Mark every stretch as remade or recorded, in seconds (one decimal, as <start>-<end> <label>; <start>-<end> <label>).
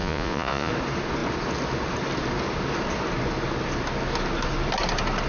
0.0-0.7 remade; 0.7-5.3 recorded